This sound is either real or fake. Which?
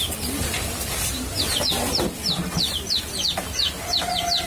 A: real